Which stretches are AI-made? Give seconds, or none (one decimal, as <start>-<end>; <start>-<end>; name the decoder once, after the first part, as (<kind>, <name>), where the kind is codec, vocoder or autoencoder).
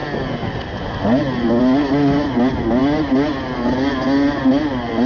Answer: none